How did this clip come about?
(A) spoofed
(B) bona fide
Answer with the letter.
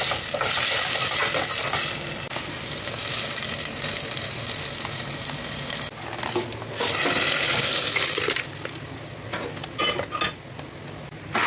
B